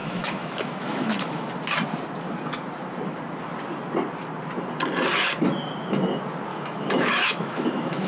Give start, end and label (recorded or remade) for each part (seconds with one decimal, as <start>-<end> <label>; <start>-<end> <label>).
0.0-1.5 remade; 1.5-6.5 recorded; 6.5-8.1 remade

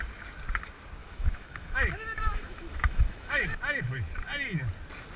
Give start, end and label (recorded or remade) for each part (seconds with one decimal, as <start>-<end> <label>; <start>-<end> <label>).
0.0-1.0 recorded; 1.0-3.6 remade; 3.6-5.2 recorded

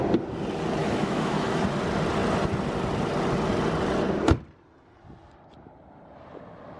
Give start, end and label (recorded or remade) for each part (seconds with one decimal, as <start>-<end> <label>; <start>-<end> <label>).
0.0-0.8 recorded; 0.8-1.6 remade; 1.6-6.8 recorded

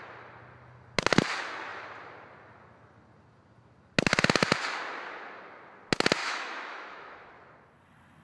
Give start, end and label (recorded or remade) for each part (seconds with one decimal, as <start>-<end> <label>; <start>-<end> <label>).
0.0-6.2 recorded; 6.2-7.3 remade; 7.3-8.2 recorded